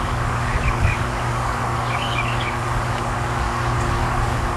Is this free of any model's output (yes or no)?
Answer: no